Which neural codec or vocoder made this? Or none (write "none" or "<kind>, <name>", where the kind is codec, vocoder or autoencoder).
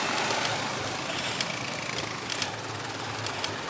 none